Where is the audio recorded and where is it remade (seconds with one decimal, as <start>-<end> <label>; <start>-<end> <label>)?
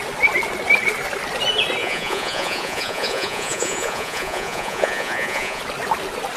0.0-1.8 recorded; 1.8-5.6 remade; 5.6-6.4 recorded